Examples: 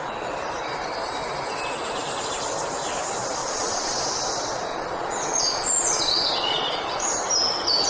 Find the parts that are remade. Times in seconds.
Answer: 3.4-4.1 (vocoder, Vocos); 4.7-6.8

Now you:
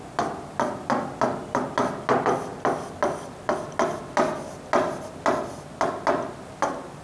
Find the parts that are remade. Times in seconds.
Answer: none

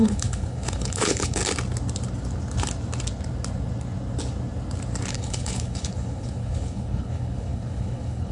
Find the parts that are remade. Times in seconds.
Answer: 0.0-1.4 (codec, HILCodec); 5.1-8.3

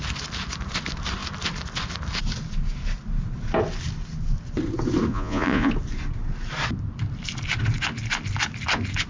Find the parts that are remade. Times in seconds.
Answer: 5.1-5.7 (vocoder, Vocos)

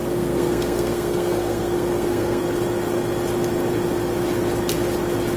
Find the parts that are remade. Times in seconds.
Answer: 0.0-2.4 (codec, SNAC)

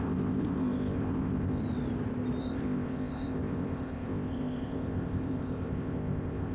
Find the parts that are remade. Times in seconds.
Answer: 0.0-1.6 (codec, ZipCodec); 2.4-6.5

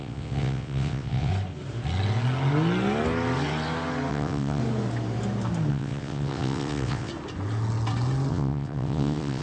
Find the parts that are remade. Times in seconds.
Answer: 0.0-1.3 (vocoder, WaveNeXt); 4.1-4.6; 5.7-7.1; 8.3-9.4